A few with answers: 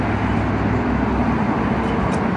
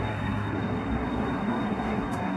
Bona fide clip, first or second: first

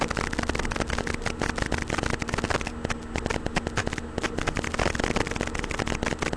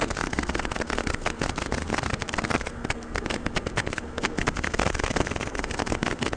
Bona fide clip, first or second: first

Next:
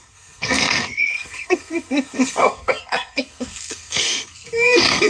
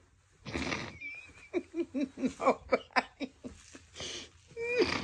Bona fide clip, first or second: second